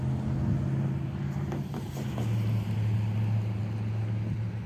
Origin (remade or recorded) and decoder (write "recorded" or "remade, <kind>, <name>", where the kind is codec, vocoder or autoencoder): recorded